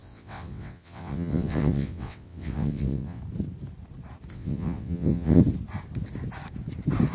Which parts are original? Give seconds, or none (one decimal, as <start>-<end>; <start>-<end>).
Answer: 3.2-4.3; 5.4-7.1